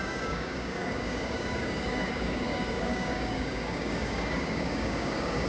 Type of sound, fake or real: fake